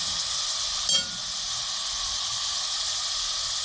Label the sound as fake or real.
real